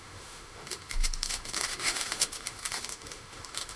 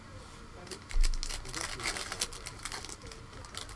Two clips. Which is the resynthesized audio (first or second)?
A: first